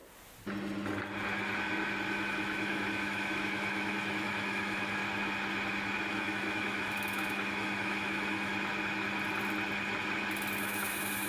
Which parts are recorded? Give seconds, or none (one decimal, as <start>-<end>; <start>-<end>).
0.0-2.1; 5.0-6.1; 8.5-10.6